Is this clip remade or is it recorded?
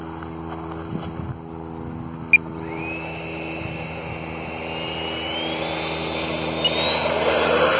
recorded